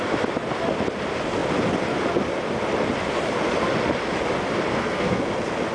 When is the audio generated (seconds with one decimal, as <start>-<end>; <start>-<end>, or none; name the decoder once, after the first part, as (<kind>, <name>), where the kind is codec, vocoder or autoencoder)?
4.7-5.2 (codec, SNAC)